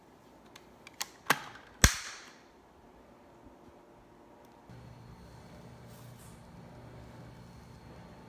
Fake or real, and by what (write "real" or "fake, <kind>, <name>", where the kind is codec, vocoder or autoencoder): real